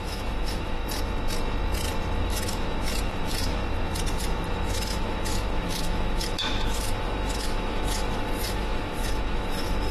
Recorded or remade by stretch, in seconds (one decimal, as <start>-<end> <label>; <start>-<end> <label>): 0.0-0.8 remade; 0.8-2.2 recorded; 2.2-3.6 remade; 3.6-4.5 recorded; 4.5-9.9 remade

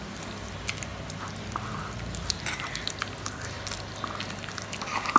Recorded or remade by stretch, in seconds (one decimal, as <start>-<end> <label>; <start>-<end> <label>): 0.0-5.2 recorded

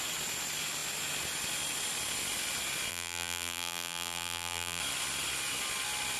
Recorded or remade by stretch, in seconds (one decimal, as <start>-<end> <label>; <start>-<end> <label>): 0.0-2.9 recorded; 2.9-4.8 remade; 4.8-6.2 recorded

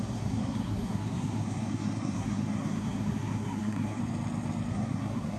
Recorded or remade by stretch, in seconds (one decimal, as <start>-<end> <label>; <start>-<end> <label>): 0.0-4.0 remade; 4.0-4.7 recorded; 4.7-5.4 remade

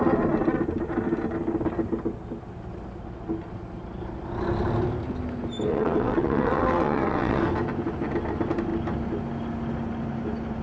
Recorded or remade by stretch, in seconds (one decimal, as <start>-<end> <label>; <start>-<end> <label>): 0.0-5.7 recorded; 5.7-7.4 remade; 7.4-10.6 recorded